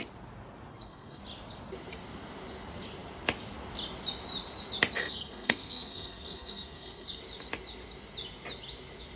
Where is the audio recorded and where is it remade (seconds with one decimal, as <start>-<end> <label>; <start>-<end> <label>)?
0.0-0.7 recorded; 0.7-1.2 remade; 1.2-5.0 recorded; 5.0-7.2 remade; 7.2-9.2 recorded

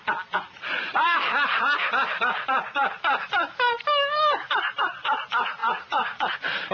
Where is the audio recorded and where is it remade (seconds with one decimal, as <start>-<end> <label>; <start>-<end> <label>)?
0.0-6.7 recorded

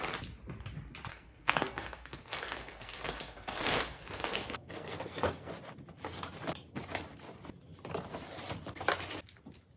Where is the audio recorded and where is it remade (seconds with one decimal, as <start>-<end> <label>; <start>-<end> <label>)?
0.0-1.1 recorded; 1.1-5.5 remade; 5.5-9.8 recorded

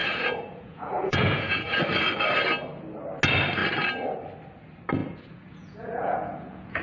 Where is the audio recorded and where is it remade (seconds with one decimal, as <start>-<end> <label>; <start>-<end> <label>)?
0.0-1.8 remade; 1.8-5.0 recorded; 5.0-6.8 remade

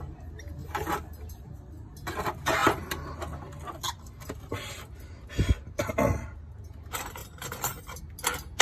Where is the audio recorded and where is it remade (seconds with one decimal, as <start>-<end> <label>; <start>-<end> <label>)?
0.0-0.6 recorded; 0.6-1.5 remade; 1.5-7.2 recorded; 7.2-8.0 remade; 8.0-8.6 recorded

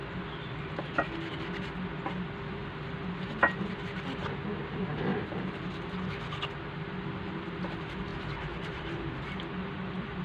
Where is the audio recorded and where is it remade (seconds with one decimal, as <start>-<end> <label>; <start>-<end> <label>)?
0.0-8.1 recorded; 8.1-9.1 remade; 9.1-10.2 recorded

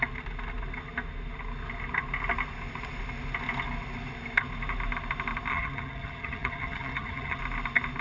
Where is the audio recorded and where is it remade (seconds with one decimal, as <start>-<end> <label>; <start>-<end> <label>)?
0.0-5.5 recorded; 5.5-7.4 remade; 7.4-8.0 recorded